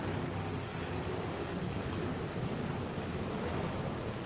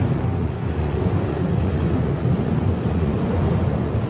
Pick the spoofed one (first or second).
second